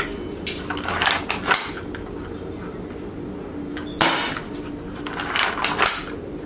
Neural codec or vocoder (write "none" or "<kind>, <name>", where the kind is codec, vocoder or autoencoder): none